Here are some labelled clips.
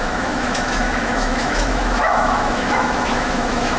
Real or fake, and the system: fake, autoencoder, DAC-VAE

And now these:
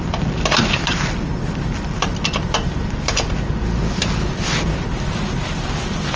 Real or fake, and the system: real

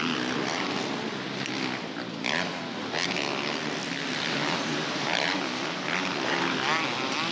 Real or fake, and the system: real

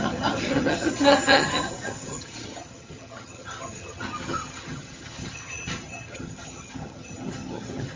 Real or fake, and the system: fake, vocoder, HiFi-GAN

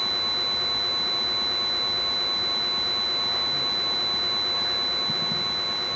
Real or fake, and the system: real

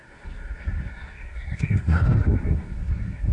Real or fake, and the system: fake, codec, SNAC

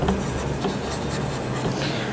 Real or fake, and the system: real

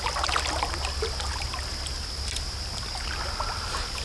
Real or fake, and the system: real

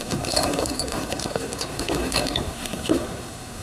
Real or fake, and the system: fake, codec, SNAC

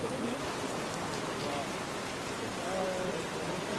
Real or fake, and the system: real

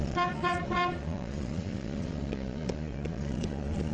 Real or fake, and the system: fake, vocoder, Vocos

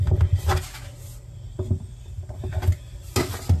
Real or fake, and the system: real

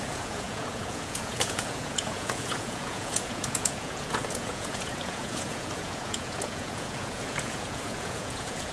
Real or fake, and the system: fake, vocoder, Vocos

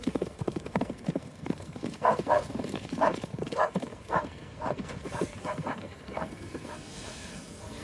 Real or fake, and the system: fake, codec, SNAC